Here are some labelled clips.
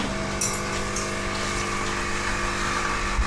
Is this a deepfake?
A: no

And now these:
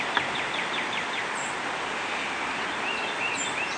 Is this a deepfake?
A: no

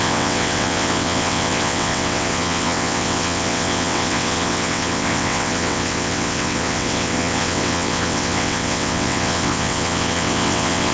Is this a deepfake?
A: yes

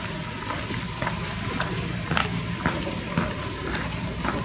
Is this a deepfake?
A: no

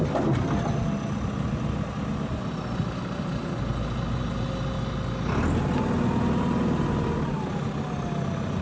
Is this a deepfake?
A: no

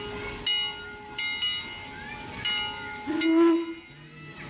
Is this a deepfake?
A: no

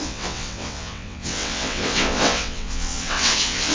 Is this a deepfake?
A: yes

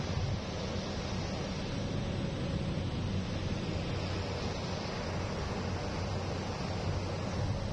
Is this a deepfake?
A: no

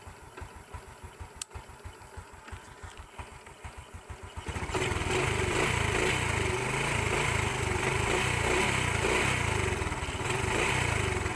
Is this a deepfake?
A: no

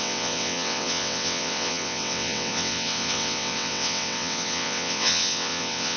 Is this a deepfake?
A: yes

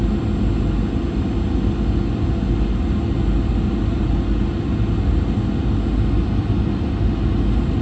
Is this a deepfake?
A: no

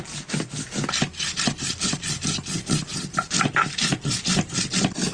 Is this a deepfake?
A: no